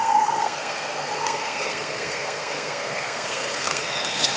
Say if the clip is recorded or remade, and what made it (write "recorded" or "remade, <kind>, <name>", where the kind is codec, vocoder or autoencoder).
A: remade, codec, SNAC